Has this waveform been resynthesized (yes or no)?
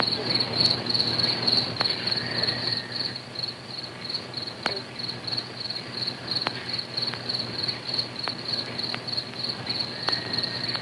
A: no